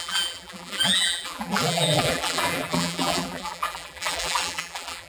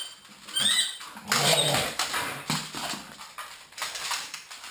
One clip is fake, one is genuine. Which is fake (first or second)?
first